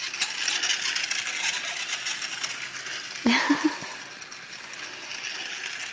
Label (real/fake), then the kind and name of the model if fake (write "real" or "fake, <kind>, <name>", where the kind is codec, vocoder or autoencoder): real